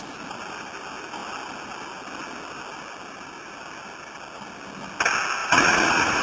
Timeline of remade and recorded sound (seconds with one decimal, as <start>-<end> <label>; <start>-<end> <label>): 0.0-5.4 recorded; 5.4-6.2 remade